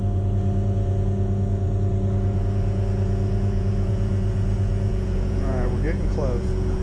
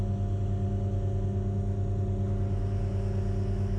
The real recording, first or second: second